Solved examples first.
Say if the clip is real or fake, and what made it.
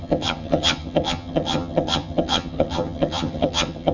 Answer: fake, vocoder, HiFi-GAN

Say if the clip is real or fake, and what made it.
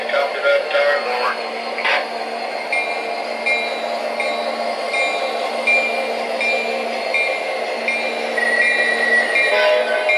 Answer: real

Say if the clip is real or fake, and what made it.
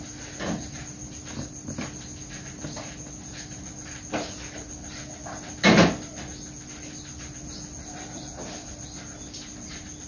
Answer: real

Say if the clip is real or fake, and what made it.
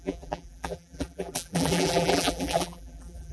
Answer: fake, vocoder, BigVGAN v2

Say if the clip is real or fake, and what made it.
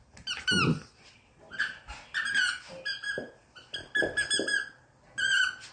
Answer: real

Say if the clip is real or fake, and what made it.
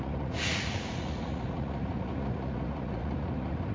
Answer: fake, vocoder, Vocos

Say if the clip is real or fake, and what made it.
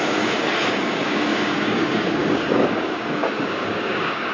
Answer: fake, codec, DAC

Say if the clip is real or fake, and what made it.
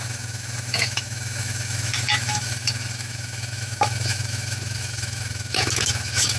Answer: fake, autoencoder, DAC-VAE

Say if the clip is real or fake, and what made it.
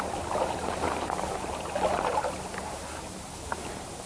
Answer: real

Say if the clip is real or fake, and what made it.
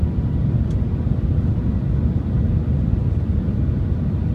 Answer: real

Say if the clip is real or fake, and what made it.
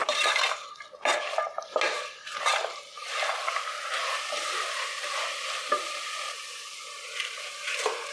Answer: fake, vocoder, BigVGAN v2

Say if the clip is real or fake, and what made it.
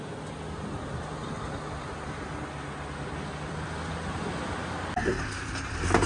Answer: real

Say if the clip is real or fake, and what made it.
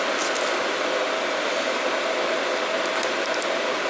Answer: real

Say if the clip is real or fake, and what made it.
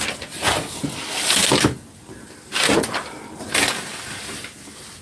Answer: real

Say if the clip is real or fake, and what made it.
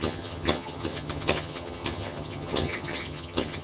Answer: fake, vocoder, HiFi-GAN